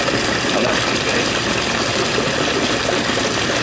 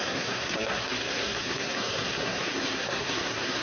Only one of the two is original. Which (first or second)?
first